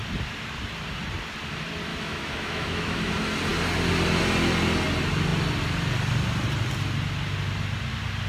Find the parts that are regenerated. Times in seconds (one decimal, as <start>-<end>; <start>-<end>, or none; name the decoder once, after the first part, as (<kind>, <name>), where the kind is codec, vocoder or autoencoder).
1.9-3.1 (autoencoder, DAC-VAE)